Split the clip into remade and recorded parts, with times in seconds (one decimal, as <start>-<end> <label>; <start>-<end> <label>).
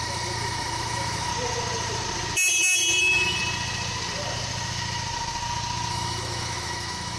0.0-1.3 remade; 1.3-3.0 recorded; 3.0-3.4 remade; 3.4-5.9 recorded; 5.9-7.2 remade